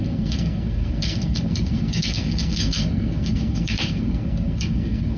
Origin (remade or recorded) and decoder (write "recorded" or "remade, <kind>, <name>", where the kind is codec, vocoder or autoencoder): remade, codec, SNAC